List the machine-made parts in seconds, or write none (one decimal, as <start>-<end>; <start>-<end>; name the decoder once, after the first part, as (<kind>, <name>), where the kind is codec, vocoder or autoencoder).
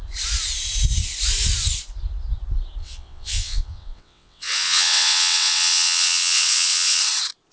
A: 2.8-7.0 (vocoder, WaveNeXt)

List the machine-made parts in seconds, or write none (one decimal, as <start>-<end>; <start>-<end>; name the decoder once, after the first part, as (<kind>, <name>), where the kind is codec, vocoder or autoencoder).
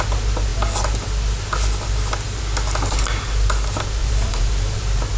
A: 4.0-4.8 (vocoder, BigVGAN v2)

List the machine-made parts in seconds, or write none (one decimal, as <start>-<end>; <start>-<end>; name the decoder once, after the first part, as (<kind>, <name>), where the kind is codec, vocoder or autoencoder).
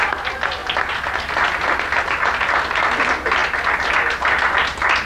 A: none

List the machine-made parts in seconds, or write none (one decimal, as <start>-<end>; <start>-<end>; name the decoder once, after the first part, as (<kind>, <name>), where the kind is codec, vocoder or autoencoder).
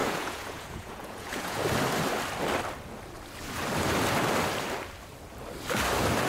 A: 0.0-1.6 (vocoder, Vocos)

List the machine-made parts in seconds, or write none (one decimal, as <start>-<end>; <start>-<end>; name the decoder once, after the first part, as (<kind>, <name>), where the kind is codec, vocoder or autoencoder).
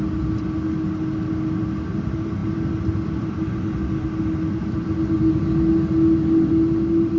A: none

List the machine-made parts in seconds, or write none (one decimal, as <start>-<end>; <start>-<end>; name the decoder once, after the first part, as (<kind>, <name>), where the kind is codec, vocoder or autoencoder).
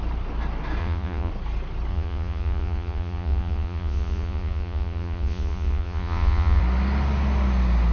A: 0.8-1.3 (vocoder, Vocos); 1.9-6.6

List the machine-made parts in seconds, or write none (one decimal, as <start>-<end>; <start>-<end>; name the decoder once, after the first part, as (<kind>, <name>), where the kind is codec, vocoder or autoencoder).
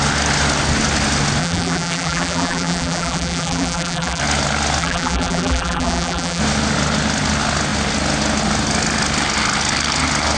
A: 1.4-4.2 (vocoder, BigVGAN v2); 4.8-6.4